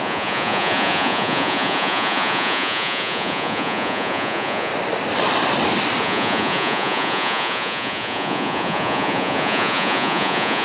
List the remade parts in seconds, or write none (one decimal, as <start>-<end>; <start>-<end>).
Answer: 0.0-4.7; 6.0-10.6